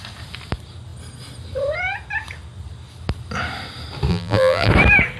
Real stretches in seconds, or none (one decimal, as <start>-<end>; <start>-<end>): 0.0-4.1; 4.7-5.2